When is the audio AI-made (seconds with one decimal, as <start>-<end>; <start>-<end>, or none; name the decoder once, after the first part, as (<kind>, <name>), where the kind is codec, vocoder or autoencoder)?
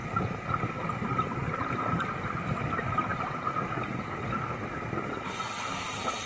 1.1-1.9 (vocoder, BigVGAN v2); 3.1-4.0